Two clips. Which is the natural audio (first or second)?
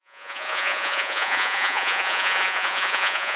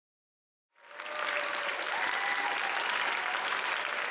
second